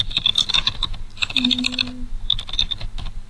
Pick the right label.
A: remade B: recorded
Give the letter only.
B